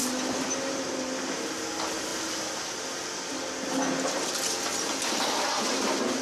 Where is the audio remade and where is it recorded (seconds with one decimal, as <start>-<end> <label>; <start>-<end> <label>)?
0.0-6.2 recorded

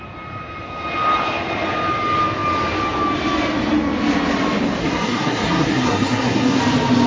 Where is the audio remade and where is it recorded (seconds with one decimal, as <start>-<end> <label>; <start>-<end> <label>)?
0.0-4.8 recorded; 4.8-6.6 remade; 6.6-7.1 recorded

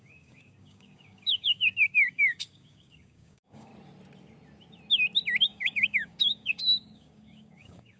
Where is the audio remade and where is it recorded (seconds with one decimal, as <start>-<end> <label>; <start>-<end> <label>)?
0.0-3.7 remade; 3.7-5.4 recorded; 5.4-8.0 remade

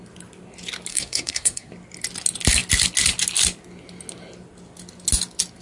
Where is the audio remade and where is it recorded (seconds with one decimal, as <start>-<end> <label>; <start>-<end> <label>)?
0.0-0.9 recorded; 0.9-1.7 remade; 1.7-5.6 recorded